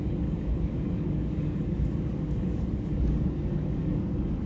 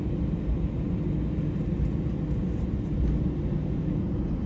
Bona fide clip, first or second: second